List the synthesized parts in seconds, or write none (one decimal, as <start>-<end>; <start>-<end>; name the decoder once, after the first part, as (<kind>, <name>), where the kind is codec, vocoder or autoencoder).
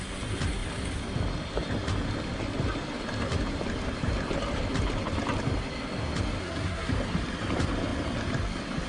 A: 6.4-6.9 (codec, SNAC)